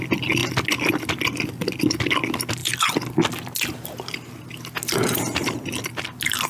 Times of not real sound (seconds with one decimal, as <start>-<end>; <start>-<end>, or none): none